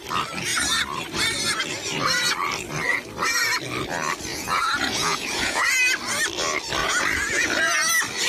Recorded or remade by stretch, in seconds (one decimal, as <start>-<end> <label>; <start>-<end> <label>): 0.0-4.3 recorded; 4.3-5.7 remade; 5.7-6.8 recorded; 6.8-7.6 remade; 7.6-8.3 recorded